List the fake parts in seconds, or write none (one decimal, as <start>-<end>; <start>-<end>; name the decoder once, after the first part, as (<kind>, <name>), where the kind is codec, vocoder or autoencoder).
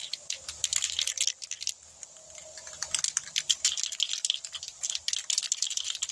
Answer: none